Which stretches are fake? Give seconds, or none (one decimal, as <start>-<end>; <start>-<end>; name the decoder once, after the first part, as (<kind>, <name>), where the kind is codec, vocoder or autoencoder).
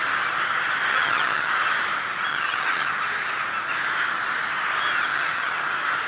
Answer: 0.9-1.5 (vocoder, HiFi-GAN); 2.3-2.9; 5.1-5.6